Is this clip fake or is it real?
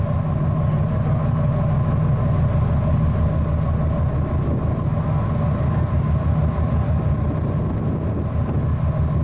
real